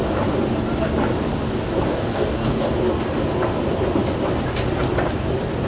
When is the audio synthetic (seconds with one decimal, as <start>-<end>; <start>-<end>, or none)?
1.9-2.7